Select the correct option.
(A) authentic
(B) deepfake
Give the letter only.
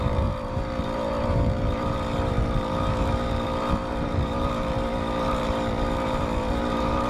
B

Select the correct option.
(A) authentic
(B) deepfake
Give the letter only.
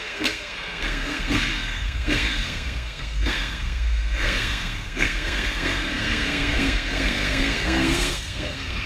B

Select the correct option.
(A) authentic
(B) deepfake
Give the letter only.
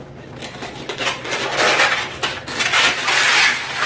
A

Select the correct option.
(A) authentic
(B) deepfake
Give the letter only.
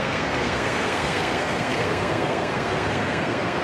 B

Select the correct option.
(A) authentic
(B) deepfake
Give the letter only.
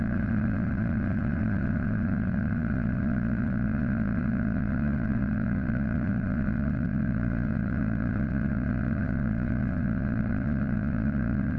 B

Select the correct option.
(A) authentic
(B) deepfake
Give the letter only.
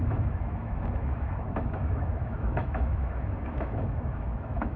B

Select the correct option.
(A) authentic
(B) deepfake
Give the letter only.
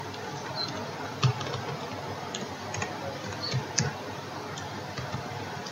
A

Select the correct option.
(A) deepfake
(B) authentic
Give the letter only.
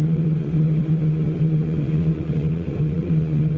A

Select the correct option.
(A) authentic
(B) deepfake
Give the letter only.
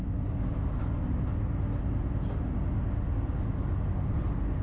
A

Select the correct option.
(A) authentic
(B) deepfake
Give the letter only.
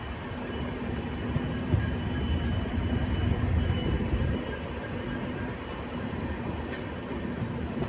B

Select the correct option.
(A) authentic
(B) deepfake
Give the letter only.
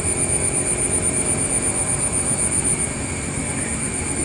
A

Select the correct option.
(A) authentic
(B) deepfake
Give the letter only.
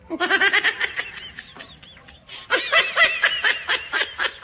A